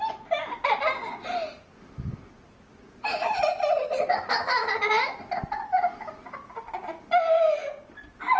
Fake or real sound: real